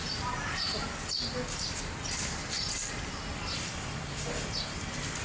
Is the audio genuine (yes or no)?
yes